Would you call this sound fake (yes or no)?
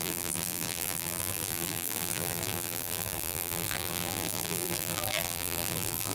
yes